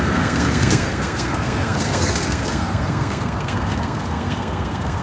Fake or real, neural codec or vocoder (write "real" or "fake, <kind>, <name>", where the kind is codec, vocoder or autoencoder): fake, codec, SNAC